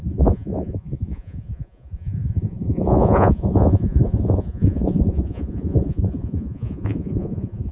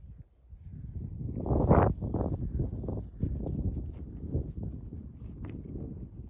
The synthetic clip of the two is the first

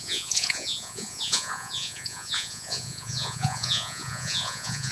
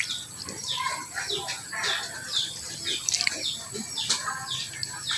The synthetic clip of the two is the first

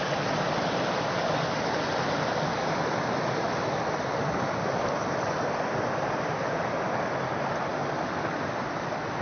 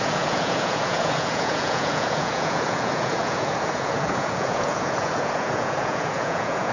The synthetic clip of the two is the second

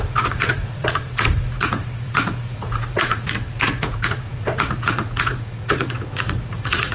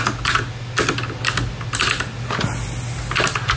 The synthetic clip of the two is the first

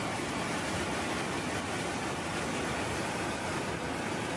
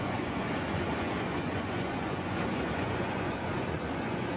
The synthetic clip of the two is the second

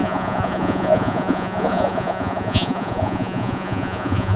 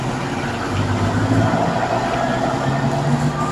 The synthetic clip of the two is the first